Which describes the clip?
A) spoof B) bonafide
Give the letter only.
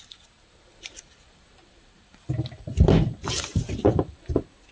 A